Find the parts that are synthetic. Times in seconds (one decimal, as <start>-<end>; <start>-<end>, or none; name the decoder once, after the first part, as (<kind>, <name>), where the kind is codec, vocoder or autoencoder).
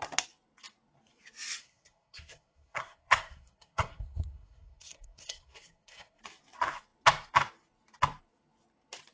1.6-6.2 (codec, SNAC)